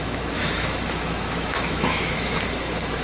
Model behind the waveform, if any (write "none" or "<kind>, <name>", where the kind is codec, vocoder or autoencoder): autoencoder, DAC-VAE